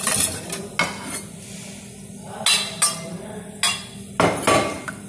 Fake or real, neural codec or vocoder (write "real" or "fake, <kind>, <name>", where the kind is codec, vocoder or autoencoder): real